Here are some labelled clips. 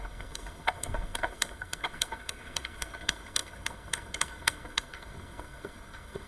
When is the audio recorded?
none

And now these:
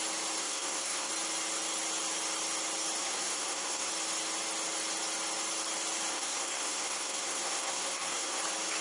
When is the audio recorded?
0.0-0.4; 1.1-3.0; 3.9-6.1; 8.4-8.8

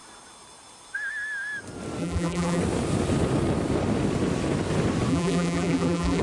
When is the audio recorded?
0.0-2.0; 2.6-5.1

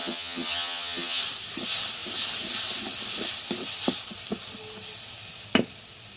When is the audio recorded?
1.2-6.2

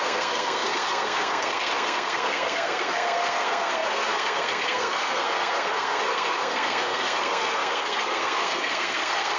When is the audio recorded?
none